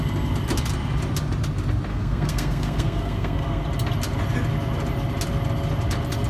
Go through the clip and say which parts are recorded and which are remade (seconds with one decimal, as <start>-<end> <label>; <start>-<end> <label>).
0.0-1.9 recorded; 1.9-3.6 remade; 3.6-6.3 recorded